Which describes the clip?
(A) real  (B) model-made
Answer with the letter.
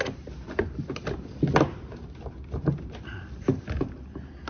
A